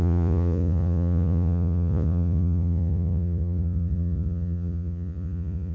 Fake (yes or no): yes